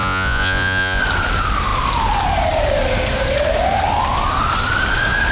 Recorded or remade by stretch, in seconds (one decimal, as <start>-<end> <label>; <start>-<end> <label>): 0.0-1.0 remade; 1.0-5.3 recorded